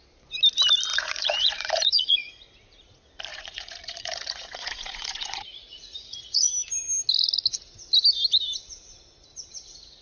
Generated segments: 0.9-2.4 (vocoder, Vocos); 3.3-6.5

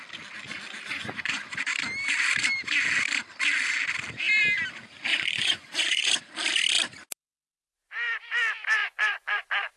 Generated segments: 0.9-1.6 (vocoder, Vocos); 5.1-6.1; 8.8-9.4

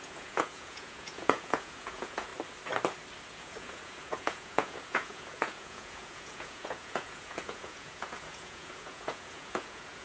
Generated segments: 0.0-2.3 (vocoder, Vocos); 3.3-10.0

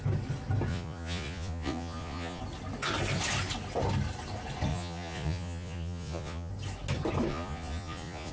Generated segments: 0.7-2.4 (vocoder, Vocos); 4.7-6.5; 7.3-8.3